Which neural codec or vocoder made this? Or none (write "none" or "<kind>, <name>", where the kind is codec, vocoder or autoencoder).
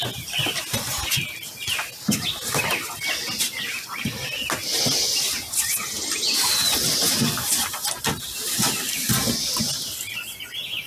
none